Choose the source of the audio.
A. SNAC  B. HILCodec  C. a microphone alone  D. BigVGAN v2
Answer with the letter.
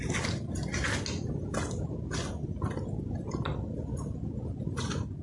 C